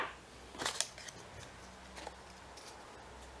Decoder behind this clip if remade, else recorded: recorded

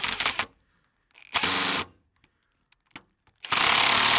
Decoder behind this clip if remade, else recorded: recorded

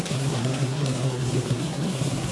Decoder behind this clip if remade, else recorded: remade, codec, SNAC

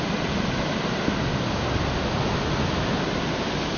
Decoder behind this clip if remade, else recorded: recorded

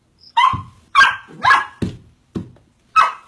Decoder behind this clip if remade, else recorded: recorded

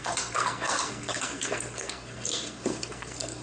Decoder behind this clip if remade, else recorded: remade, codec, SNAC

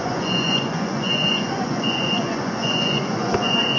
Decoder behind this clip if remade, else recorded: remade, vocoder, Vocos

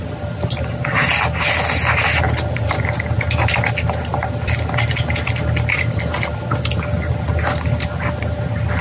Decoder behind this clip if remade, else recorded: recorded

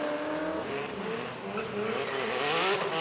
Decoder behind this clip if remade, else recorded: recorded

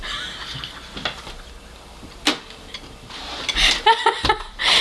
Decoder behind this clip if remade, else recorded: recorded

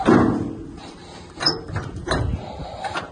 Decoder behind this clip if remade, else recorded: recorded